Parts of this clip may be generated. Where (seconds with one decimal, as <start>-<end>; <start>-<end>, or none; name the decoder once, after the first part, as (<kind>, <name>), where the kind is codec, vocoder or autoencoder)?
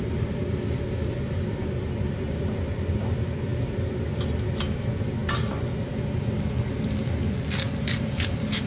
none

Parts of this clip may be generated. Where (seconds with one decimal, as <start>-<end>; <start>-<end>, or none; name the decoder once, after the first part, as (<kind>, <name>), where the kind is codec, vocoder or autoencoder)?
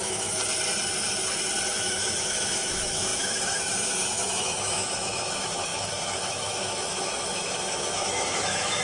0.0-0.4 (autoencoder, DAC-VAE); 1.7-8.8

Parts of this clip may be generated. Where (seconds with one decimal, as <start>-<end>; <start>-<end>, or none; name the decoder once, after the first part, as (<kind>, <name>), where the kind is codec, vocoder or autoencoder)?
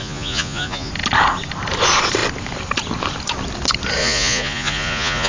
0.0-0.9 (vocoder, Vocos); 4.0-5.3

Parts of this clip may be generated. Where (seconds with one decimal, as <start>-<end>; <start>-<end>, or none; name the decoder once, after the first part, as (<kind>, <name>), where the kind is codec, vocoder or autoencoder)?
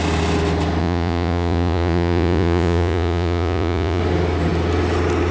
0.8-4.0 (vocoder, Vocos)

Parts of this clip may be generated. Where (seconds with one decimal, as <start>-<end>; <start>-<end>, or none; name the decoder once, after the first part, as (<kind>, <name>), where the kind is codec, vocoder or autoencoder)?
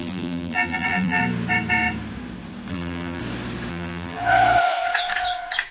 0.0-1.2 (vocoder, BigVGAN v2); 2.7-3.2; 3.7-4.2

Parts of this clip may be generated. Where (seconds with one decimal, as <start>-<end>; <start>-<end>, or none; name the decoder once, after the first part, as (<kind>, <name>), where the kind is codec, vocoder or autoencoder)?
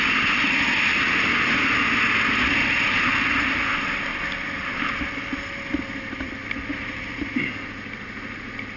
4.1-5.1 (vocoder, BigVGAN v2); 6.7-7.4